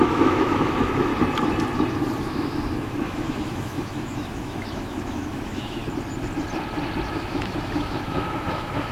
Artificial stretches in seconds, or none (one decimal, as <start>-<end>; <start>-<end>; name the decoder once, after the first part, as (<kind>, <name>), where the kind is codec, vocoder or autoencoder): 0.0-1.1 (autoencoder, DAC-VAE); 2.2-5.8; 7.1-8.9